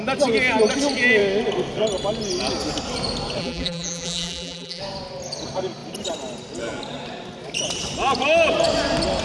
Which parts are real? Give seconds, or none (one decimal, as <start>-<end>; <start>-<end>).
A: 0.0-3.4; 4.8-9.2